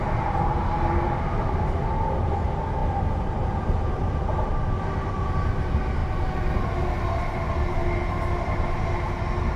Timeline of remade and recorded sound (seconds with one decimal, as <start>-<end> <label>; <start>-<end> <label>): 0.0-9.6 recorded